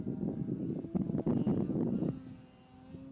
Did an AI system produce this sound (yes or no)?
no